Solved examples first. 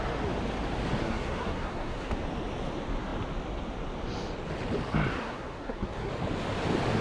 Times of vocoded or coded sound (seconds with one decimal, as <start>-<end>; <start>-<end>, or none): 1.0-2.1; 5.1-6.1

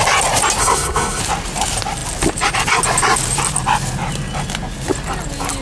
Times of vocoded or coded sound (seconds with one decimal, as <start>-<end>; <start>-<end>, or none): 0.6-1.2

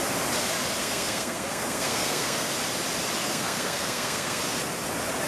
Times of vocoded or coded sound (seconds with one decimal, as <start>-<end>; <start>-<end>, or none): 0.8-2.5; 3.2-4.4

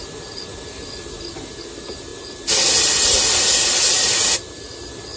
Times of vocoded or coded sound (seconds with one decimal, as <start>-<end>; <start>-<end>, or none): none

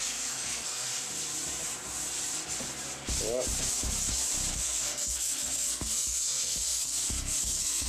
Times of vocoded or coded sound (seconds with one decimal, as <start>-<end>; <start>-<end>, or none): 0.0-0.9; 4.5-7.9

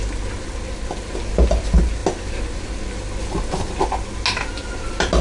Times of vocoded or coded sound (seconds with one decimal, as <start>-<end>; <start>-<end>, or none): none

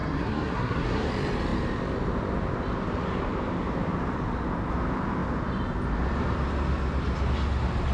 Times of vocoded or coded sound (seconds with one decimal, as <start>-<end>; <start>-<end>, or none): 0.0-1.1

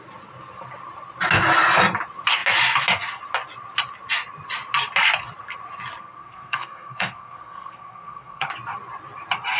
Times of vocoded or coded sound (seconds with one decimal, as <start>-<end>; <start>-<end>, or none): 6.0-8.5